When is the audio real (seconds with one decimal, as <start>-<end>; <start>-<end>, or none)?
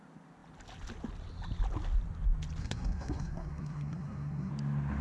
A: 0.0-2.6; 4.5-5.0